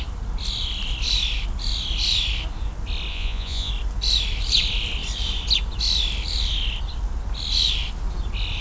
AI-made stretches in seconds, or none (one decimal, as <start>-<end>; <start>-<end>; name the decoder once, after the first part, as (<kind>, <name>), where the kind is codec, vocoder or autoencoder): 3.1-3.7 (vocoder, Vocos)